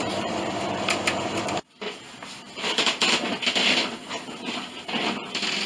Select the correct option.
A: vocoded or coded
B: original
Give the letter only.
B